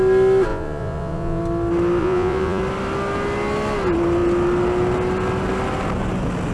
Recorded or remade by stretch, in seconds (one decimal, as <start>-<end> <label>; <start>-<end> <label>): 0.0-0.5 recorded; 0.5-1.4 remade; 1.4-2.0 recorded; 2.0-2.6 remade; 2.6-6.5 recorded